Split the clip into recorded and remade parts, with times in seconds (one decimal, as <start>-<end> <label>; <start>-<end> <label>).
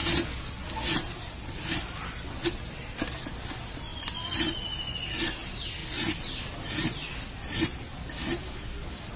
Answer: 0.0-9.2 recorded